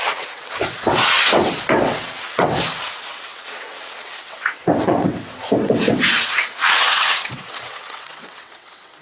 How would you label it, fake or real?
fake